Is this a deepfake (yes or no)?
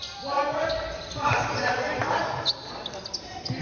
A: no